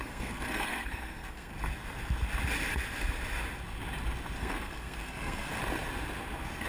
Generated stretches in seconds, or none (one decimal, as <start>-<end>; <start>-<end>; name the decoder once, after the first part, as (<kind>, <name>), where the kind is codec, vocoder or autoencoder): 0.0-1.5 (codec, SNAC); 4.4-5.6